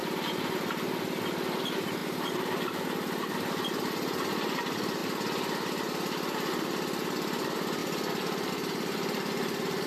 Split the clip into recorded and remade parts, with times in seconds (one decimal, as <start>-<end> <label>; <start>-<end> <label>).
0.0-1.6 recorded; 1.6-5.0 remade; 5.0-6.5 recorded; 6.5-7.8 remade; 7.8-8.5 recorded; 8.5-9.9 remade